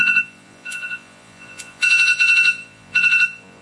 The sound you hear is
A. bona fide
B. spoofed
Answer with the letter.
B